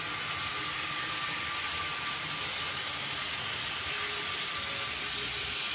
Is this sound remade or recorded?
recorded